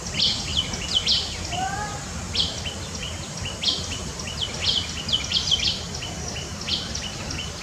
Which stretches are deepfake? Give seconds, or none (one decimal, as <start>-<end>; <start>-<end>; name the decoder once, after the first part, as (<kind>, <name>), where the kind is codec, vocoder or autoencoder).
none

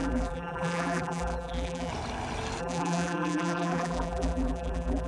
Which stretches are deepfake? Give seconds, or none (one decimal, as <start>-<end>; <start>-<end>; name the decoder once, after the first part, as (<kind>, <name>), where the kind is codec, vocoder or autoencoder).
0.0-1.9 (vocoder, BigVGAN v2); 2.6-5.1

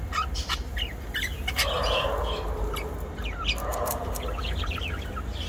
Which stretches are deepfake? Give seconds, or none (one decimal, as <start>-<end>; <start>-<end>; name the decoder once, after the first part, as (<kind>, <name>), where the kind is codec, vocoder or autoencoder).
3.7-4.6 (vocoder, BigVGAN v2)

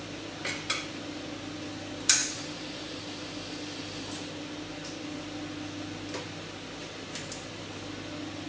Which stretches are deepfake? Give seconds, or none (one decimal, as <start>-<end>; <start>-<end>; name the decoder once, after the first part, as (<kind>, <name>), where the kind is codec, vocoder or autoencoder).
2.2-3.0 (vocoder, BigVGAN v2)

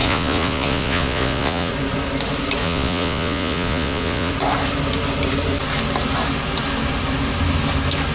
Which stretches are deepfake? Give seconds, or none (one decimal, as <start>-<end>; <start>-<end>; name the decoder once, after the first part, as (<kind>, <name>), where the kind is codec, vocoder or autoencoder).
0.0-1.7 (vocoder, Vocos); 2.6-4.3

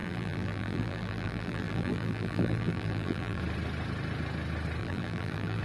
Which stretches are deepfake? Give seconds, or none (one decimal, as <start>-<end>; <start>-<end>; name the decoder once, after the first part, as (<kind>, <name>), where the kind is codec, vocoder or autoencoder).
0.0-3.4 (vocoder, BigVGAN v2); 4.8-5.6